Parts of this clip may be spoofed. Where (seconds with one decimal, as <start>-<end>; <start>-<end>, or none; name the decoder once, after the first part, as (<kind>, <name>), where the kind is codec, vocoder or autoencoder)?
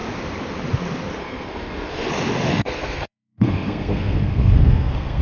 1.2-2.1 (codec, SNAC); 2.5-5.2